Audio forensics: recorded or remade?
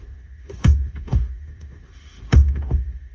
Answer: remade